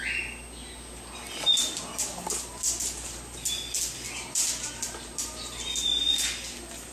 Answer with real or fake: real